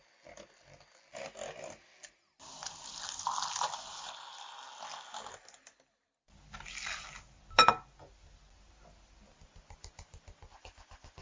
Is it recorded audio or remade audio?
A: recorded